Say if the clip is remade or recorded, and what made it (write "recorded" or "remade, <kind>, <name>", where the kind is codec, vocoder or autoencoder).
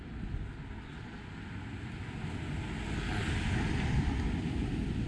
recorded